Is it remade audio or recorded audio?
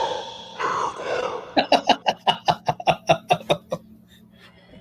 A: recorded